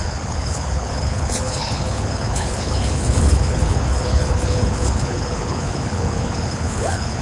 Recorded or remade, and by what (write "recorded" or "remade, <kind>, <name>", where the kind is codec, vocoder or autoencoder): remade, codec, HILCodec